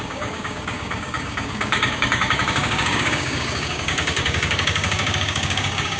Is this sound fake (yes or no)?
yes